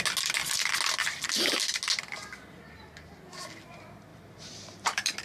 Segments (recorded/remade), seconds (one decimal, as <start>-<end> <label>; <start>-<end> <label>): 0.0-4.1 recorded; 4.1-5.2 remade